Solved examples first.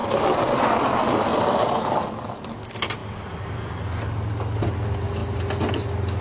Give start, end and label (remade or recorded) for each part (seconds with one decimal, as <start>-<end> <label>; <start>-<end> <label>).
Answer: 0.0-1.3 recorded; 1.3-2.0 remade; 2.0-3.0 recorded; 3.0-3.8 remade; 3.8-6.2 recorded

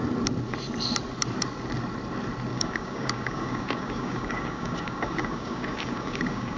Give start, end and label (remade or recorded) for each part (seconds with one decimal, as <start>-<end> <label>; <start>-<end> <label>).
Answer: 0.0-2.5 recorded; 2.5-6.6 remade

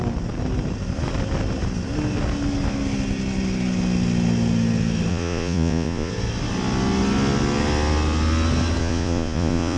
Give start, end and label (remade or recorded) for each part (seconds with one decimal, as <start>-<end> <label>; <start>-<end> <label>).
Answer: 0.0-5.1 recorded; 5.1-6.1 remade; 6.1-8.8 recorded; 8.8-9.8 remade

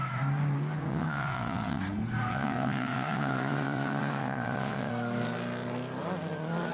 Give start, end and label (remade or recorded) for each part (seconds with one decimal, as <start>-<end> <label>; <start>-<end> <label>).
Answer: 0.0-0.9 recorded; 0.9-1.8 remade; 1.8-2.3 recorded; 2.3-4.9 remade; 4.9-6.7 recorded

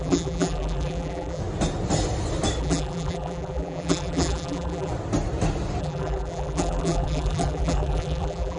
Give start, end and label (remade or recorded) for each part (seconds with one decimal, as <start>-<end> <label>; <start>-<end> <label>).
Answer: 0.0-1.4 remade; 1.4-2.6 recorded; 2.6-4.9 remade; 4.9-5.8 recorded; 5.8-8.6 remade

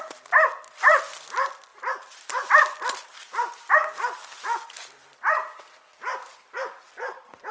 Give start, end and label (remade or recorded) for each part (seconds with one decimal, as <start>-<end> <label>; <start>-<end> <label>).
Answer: 0.0-7.5 recorded

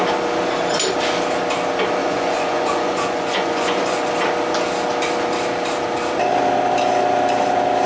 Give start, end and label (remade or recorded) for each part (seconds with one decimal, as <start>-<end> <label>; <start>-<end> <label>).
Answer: 0.0-2.0 recorded; 2.0-4.1 remade; 4.1-7.9 recorded

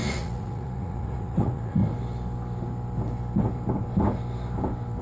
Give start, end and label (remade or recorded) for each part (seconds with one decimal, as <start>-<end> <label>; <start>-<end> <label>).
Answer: 0.0-1.8 remade; 1.8-5.0 recorded